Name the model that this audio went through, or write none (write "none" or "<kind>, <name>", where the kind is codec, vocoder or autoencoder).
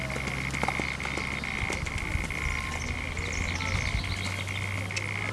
none